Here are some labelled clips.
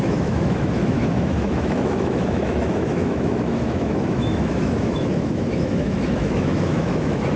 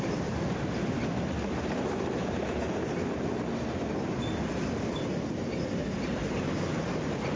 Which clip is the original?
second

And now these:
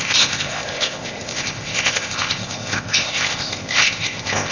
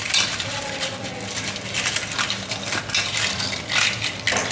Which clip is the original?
second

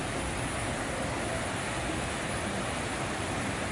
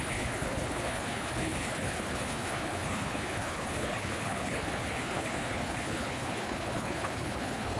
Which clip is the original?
first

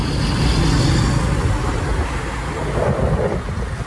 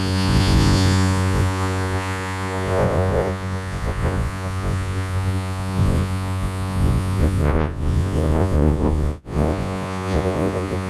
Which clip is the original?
first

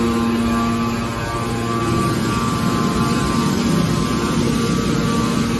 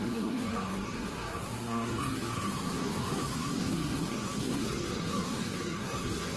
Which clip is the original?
first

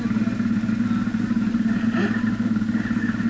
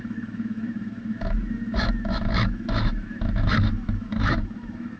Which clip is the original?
first